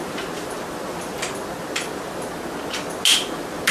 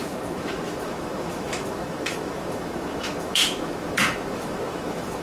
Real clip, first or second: first